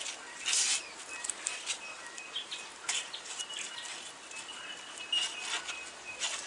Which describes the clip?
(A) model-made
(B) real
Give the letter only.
B